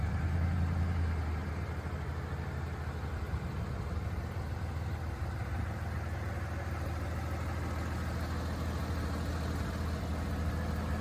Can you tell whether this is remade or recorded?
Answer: recorded